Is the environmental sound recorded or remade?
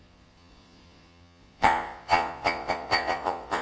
remade